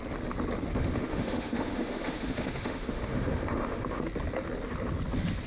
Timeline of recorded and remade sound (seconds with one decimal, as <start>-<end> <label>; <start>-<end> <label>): 0.0-0.7 recorded; 0.7-4.0 remade; 4.0-5.5 recorded